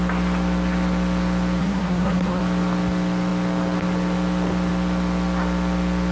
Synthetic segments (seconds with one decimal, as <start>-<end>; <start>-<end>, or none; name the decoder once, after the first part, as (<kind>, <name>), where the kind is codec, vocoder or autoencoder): 1.6-2.4 (codec, SNAC)